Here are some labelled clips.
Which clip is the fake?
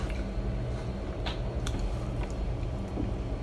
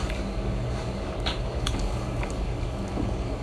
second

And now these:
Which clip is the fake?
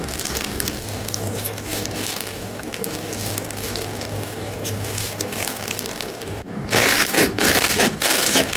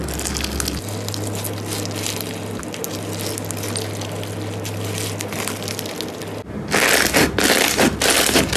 first